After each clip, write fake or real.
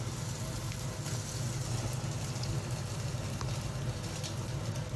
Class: real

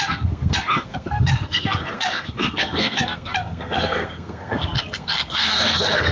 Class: fake